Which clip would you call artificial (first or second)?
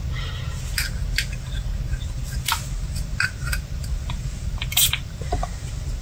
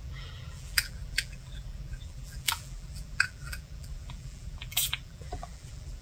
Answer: second